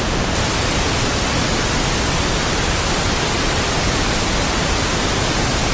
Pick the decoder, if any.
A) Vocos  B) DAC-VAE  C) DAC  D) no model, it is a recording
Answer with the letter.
D